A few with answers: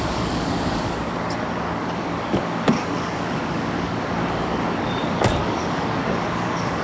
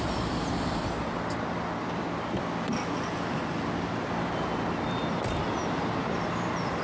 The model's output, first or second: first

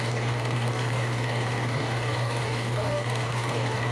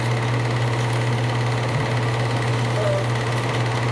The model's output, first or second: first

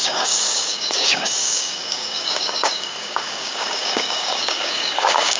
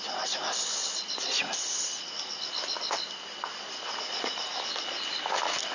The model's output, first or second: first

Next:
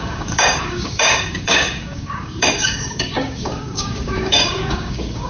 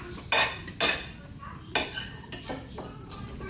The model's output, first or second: first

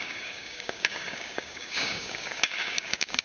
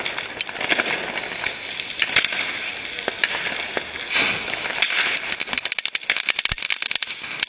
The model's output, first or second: first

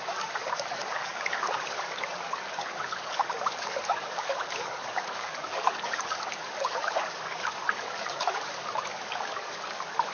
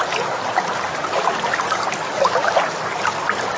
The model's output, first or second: first